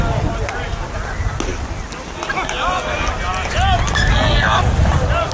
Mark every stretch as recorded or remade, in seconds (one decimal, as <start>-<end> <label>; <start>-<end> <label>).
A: 0.0-5.3 recorded